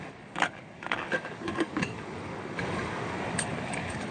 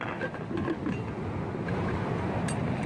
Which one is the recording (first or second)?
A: second